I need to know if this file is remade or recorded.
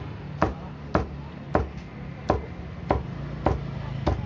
recorded